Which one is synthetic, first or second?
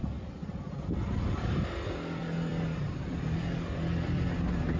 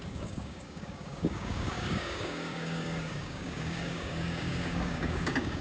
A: second